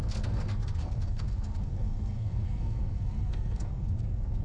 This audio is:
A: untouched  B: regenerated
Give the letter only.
B